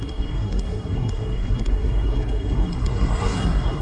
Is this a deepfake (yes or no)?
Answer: yes